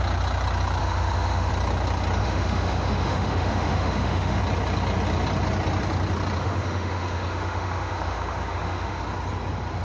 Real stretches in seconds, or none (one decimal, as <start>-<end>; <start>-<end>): 0.0-0.8; 1.5-2.2; 4.4-6.4; 9.0-9.8